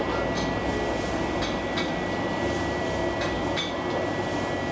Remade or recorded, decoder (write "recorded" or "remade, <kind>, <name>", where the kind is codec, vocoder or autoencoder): recorded